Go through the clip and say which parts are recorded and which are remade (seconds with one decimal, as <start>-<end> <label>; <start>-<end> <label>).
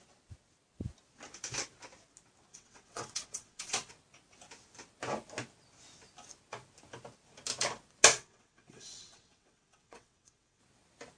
0.0-2.5 recorded; 2.5-3.9 remade; 3.9-8.1 recorded; 8.1-10.6 remade; 10.6-11.2 recorded